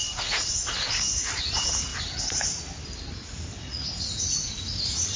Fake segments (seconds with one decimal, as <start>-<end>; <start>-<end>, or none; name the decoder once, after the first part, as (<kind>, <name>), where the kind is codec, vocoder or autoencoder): 0.0-1.9 (vocoder, Vocos); 3.6-5.2